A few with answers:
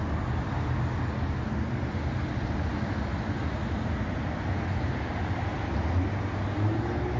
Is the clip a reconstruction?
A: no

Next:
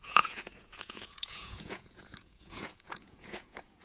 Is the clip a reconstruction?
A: yes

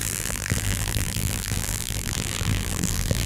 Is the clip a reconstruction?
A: yes